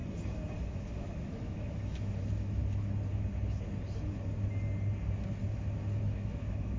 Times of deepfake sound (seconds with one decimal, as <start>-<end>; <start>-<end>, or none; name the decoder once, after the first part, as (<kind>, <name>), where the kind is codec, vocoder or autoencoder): 0.6-2.6 (autoencoder, DAC-VAE); 6.0-6.8